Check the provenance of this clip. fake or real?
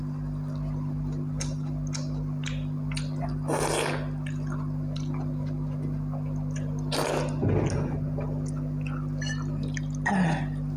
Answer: real